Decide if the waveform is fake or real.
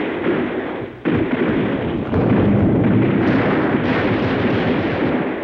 real